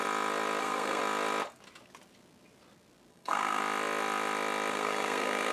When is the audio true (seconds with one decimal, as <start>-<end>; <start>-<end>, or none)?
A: 0.0-0.6; 1.0-3.1; 3.6-4.7